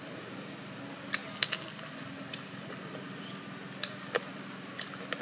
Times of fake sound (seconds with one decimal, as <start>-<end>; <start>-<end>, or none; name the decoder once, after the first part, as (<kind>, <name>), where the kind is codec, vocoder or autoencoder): none